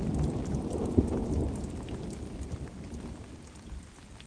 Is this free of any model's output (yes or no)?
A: yes